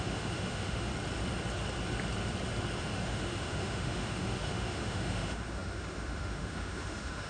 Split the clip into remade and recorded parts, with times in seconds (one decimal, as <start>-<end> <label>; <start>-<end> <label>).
0.0-0.9 remade; 0.9-2.8 recorded; 2.8-7.3 remade